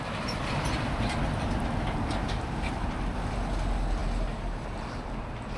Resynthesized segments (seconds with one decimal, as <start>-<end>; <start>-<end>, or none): none